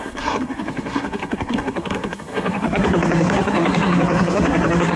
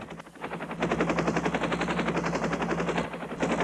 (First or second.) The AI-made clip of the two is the first